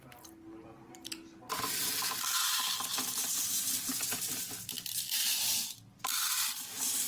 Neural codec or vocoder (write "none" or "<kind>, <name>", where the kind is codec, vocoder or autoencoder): vocoder, BigVGAN v2